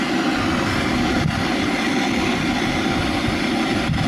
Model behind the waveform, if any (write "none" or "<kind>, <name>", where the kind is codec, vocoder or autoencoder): none